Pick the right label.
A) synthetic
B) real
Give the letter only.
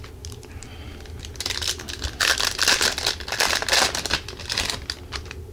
B